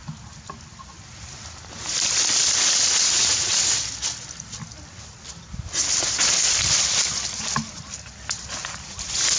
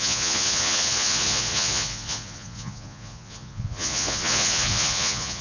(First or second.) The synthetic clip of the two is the second